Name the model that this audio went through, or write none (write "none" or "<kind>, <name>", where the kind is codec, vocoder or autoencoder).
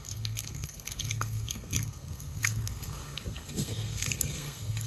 codec, SNAC